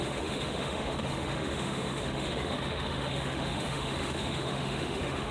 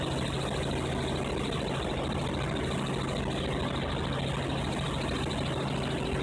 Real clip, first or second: second